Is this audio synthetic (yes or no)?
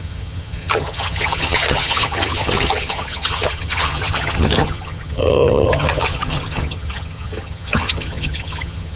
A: yes